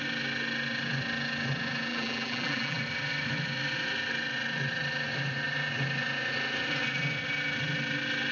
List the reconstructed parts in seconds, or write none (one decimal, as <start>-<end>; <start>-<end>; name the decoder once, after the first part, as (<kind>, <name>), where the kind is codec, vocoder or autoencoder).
1.9-2.8 (vocoder, BigVGAN v2)